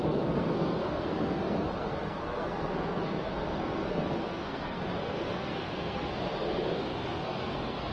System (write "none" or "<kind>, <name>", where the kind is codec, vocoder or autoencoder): codec, SNAC